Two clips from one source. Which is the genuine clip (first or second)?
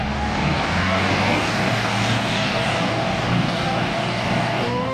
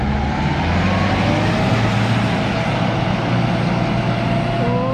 second